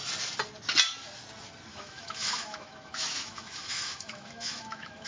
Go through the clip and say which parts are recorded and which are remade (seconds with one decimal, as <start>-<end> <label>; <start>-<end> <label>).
0.0-1.7 recorded; 1.7-5.1 remade